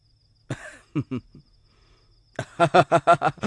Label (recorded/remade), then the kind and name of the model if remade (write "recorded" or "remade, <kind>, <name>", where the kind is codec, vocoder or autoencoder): recorded